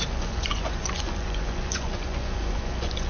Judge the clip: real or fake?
fake